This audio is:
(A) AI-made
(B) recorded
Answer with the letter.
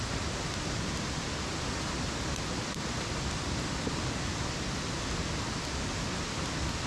B